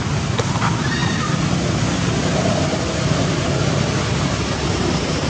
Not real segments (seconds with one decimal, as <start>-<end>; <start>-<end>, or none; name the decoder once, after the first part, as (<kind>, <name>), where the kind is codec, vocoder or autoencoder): 1.0-3.4 (vocoder, BigVGAN v2)

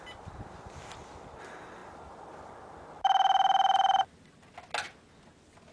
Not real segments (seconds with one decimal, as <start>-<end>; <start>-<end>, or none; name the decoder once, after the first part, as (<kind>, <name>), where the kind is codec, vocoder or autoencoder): none

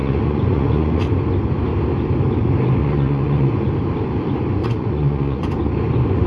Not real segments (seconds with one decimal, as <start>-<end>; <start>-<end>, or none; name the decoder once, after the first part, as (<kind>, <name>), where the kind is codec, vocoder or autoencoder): 0.0-1.0 (vocoder, Vocos); 2.8-3.7; 4.6-5.5

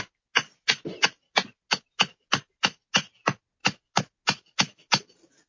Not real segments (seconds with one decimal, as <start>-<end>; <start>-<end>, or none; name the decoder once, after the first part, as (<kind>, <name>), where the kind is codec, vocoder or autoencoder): none

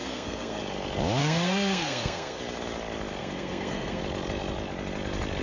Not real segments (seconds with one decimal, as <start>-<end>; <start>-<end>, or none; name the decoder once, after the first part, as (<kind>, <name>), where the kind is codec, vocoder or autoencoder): 0.0-0.6 (codec, SNAC); 1.2-2.4; 3.2-4.0

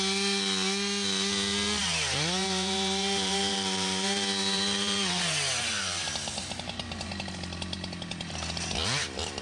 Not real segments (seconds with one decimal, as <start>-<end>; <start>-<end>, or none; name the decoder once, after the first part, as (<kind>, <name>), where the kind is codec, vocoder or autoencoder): 1.8-7.1 (vocoder, BigVGAN v2)